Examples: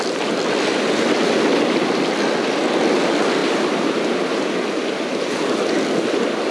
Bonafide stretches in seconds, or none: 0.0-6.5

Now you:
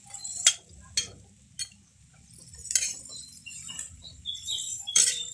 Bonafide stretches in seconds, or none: 0.5-4.0

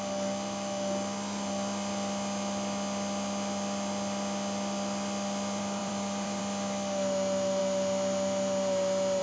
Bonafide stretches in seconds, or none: 0.0-5.8; 6.4-9.2

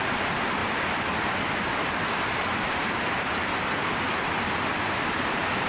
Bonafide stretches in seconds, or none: 0.0-2.4; 3.5-4.7

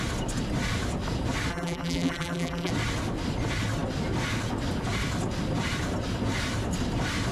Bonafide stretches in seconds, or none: 0.0-1.5; 2.7-7.3

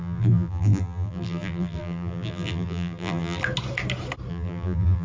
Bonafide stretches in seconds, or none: 3.4-4.3

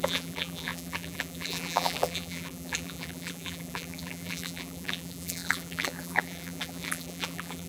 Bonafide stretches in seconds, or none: none